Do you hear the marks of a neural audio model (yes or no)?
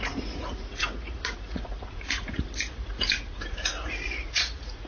yes